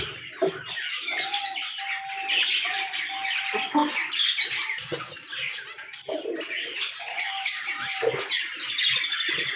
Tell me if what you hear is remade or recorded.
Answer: recorded